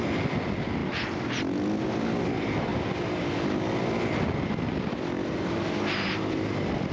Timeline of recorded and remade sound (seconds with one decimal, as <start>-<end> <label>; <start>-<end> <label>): 0.0-6.9 recorded